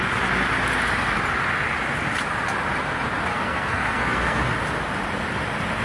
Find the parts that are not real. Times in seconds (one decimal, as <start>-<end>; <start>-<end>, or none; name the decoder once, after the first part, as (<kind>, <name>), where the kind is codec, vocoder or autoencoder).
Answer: 3.3-4.4 (codec, SNAC)